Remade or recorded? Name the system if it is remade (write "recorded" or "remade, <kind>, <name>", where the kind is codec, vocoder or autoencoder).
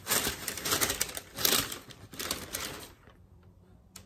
remade, vocoder, BigVGAN v2